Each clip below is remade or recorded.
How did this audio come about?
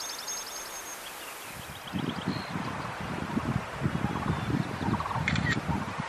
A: recorded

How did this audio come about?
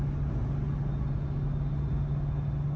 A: recorded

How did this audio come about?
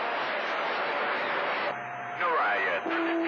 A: recorded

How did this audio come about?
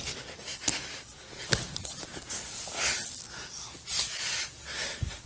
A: recorded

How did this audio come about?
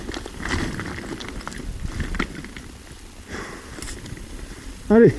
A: recorded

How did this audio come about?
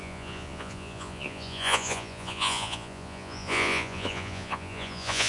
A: remade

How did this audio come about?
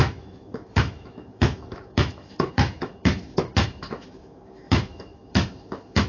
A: remade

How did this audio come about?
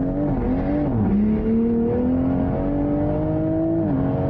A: recorded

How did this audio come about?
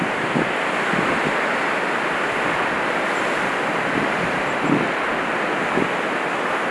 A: recorded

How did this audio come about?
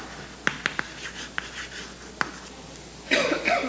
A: recorded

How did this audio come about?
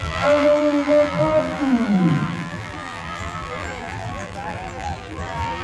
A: remade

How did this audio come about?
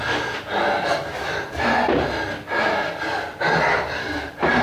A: recorded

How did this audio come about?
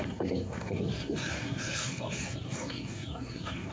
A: remade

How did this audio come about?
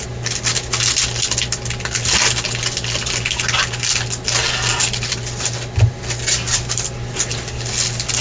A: recorded